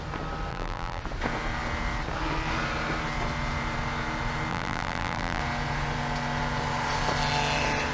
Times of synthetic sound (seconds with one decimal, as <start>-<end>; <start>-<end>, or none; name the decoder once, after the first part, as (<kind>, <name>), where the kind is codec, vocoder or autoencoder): 0.5-1.0 (vocoder, BigVGAN v2); 4.5-5.4